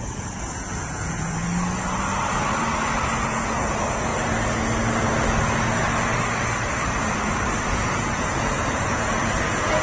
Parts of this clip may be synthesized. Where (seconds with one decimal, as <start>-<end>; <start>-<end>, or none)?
0.0-1.4; 3.1-4.1; 7.7-9.8